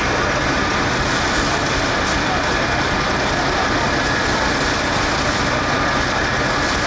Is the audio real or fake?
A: real